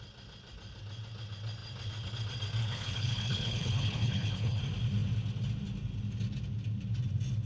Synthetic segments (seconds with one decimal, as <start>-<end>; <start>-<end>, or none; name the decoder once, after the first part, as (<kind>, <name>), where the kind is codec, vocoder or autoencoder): 2.6-4.6 (codec, HILCodec)